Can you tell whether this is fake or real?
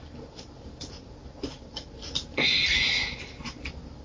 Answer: real